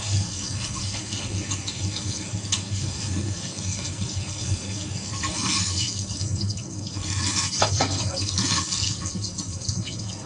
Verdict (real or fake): fake